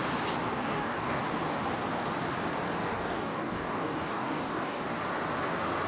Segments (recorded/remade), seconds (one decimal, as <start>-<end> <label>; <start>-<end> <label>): 0.0-0.5 recorded; 0.5-1.2 remade; 1.2-2.8 recorded; 2.8-4.8 remade; 4.8-5.9 recorded